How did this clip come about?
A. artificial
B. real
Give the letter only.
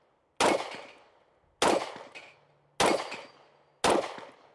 B